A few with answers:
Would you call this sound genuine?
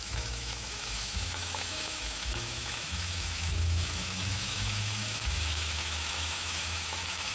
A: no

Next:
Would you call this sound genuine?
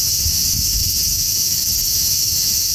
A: no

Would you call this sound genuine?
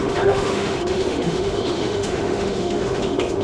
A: no